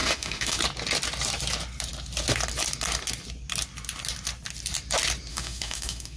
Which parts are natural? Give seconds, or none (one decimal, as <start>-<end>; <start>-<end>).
0.6-5.3